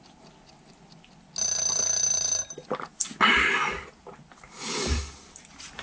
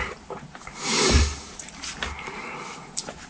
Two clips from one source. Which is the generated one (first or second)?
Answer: second